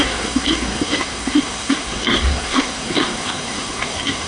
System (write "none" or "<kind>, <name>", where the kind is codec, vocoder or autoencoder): codec, SNAC